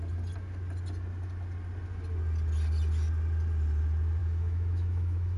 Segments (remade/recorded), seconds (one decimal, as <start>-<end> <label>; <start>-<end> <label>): 0.0-4.2 recorded; 4.2-5.4 remade